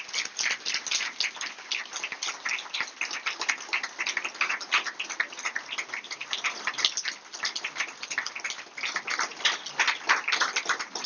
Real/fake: real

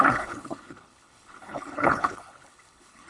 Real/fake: fake